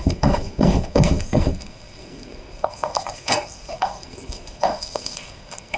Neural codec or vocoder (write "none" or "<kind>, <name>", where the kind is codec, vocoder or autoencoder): codec, SNAC